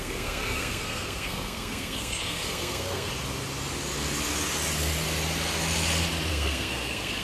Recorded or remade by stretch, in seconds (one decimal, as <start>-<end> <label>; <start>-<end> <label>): 0.0-3.1 remade; 3.1-6.3 recorded; 6.3-7.2 remade